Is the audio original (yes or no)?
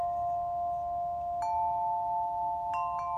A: yes